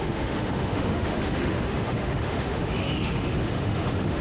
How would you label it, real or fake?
fake